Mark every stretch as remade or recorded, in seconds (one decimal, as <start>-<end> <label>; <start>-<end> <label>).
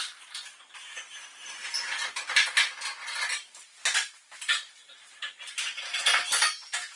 0.0-7.0 recorded